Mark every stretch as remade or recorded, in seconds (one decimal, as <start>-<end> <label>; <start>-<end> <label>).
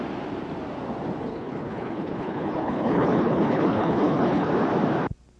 0.0-1.3 recorded; 1.3-4.5 remade; 4.5-5.4 recorded